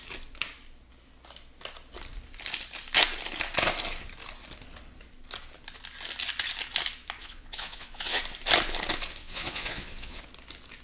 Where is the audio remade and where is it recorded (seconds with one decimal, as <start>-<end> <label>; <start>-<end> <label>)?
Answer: 0.0-7.2 recorded; 7.2-8.2 remade; 8.2-9.2 recorded; 9.2-10.2 remade; 10.2-10.8 recorded